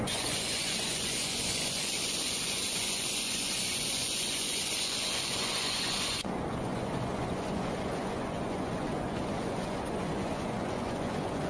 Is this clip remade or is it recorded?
remade